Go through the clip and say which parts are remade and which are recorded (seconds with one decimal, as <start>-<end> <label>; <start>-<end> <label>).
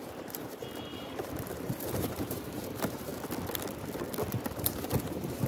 0.0-3.1 remade; 3.1-4.5 recorded; 4.5-5.5 remade